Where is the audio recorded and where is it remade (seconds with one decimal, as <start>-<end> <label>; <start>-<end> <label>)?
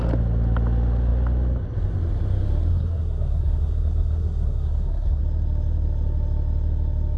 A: 0.0-2.7 recorded; 2.7-5.2 remade; 5.2-7.2 recorded